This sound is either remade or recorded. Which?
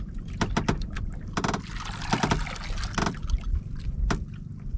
recorded